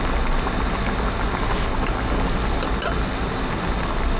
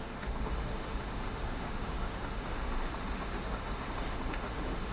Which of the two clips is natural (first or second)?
first